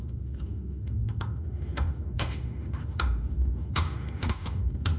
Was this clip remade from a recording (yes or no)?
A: yes